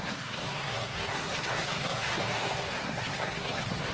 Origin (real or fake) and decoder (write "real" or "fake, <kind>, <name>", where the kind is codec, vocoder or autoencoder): fake, codec, SNAC